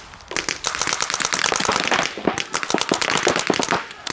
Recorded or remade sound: recorded